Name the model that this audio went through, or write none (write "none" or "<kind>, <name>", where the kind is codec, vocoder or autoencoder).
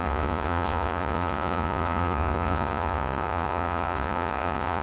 vocoder, Vocos